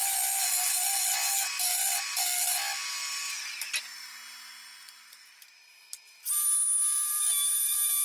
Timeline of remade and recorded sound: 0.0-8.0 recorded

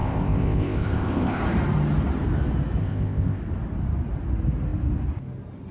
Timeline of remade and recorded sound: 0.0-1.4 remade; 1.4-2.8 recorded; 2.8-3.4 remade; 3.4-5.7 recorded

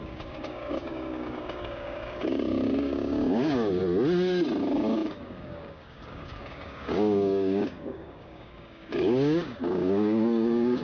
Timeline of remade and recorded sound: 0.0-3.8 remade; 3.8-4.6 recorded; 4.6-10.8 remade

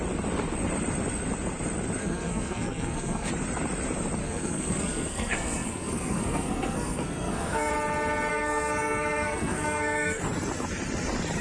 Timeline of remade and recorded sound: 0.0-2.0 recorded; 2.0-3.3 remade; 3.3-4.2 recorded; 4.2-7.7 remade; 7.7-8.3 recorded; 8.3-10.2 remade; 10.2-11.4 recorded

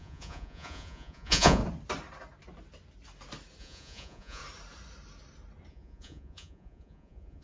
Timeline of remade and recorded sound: 0.0-1.6 remade; 1.6-3.6 recorded; 3.6-4.4 remade; 4.4-5.7 recorded; 5.7-7.4 remade

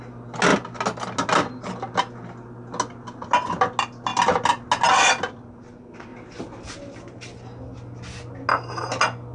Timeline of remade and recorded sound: 0.0-9.3 recorded

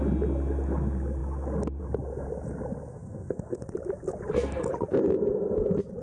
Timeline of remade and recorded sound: 0.0-2.9 recorded; 2.9-3.6 remade; 3.6-6.0 recorded